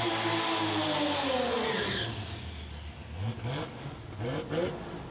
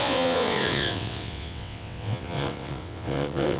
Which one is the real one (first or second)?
first